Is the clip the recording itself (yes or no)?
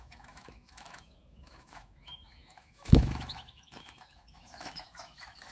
no